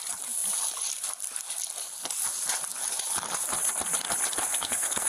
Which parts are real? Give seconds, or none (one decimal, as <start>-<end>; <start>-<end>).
0.0-4.5